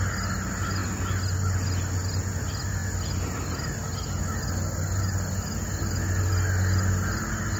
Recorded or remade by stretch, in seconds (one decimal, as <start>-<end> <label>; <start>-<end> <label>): 0.0-7.6 recorded